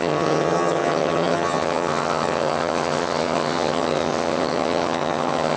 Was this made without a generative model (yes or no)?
no